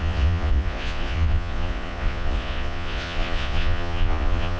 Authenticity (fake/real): fake